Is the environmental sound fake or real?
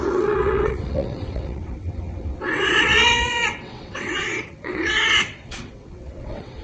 fake